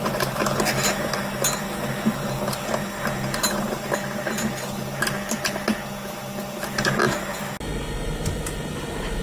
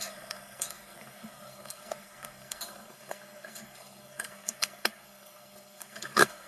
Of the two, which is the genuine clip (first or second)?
first